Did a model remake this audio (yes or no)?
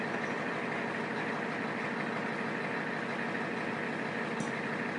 no